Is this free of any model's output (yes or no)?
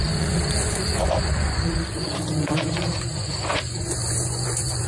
no